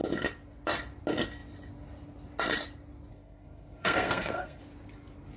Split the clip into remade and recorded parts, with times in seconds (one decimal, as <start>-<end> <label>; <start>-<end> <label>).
0.0-3.1 recorded; 3.1-4.6 remade; 4.6-5.4 recorded